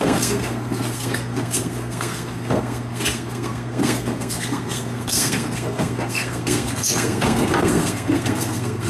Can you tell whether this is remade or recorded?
remade